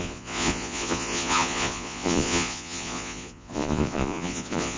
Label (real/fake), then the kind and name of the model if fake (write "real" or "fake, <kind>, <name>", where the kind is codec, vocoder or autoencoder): fake, vocoder, Vocos